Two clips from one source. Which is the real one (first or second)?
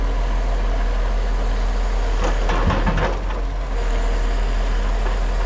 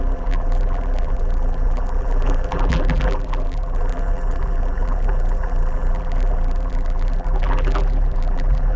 first